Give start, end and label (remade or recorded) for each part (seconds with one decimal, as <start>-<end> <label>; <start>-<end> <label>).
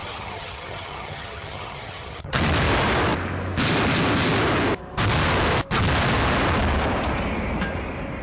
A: 0.0-2.4 remade; 2.4-8.2 recorded